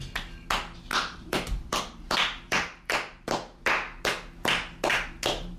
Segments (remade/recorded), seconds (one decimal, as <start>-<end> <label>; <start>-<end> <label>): 0.0-0.9 recorded; 0.9-3.6 remade; 3.6-5.6 recorded